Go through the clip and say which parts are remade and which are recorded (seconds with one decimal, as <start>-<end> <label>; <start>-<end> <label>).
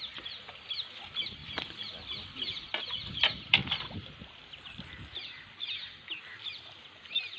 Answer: 0.0-7.4 recorded